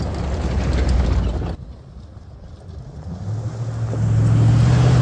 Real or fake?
real